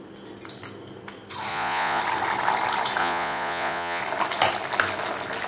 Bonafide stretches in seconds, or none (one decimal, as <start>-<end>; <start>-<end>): 0.0-1.5; 2.0-3.0; 4.0-5.5